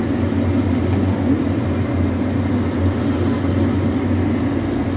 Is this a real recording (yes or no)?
yes